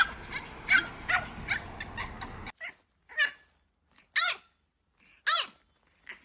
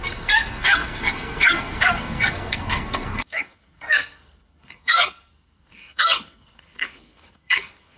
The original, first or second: first